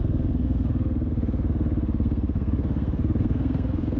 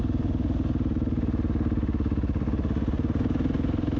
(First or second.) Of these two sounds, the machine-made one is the first